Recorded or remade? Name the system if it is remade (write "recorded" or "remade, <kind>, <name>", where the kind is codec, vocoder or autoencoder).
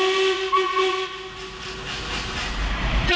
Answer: recorded